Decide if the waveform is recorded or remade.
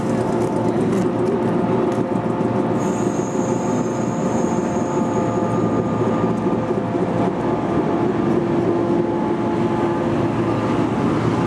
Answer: recorded